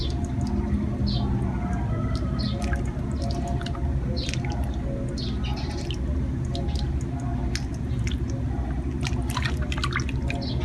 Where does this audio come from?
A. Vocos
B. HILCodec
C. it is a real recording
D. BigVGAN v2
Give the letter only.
C